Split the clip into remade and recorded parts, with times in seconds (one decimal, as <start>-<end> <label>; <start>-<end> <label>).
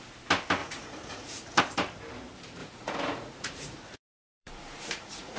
0.0-0.6 recorded; 0.6-1.6 remade; 1.6-2.6 recorded; 2.6-5.4 remade